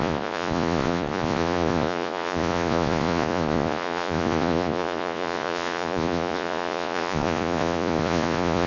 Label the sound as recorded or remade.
remade